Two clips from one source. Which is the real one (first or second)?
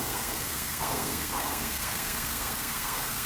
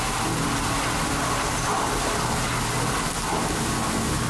second